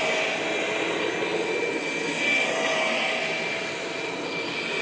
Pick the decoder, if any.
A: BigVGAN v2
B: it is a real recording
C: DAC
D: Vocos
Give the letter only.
B